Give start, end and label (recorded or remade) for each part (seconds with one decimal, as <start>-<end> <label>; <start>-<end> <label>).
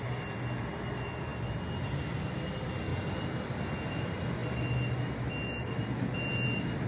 0.0-6.9 recorded